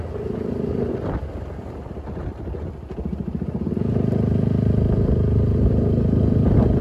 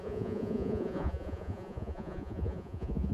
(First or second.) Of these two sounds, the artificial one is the second